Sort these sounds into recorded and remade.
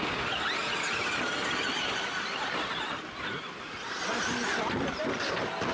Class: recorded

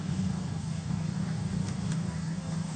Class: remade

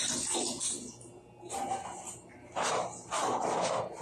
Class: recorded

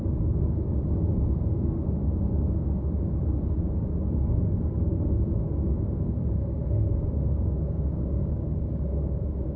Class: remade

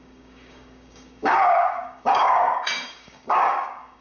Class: remade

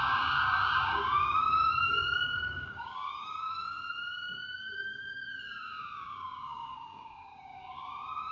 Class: remade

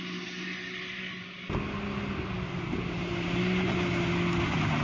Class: recorded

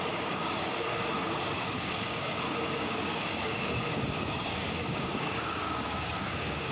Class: remade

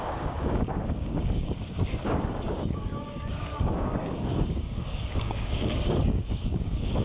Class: remade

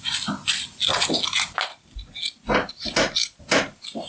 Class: recorded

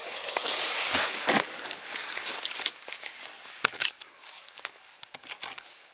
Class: remade